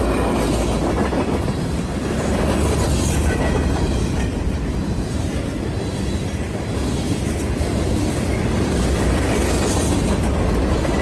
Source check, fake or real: real